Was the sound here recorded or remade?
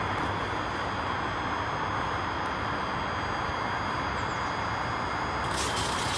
recorded